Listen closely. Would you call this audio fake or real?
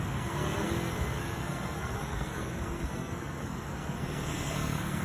fake